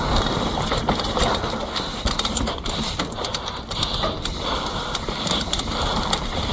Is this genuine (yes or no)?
yes